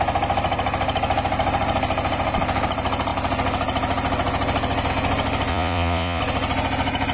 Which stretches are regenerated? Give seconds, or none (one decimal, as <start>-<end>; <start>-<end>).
5.5-6.2